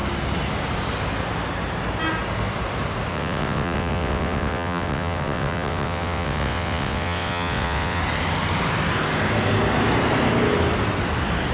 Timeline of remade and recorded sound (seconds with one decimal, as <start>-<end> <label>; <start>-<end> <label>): 0.0-3.1 recorded; 3.1-8.0 remade; 8.0-11.5 recorded